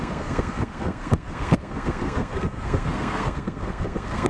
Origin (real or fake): fake